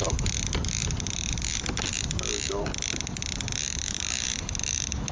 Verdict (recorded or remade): remade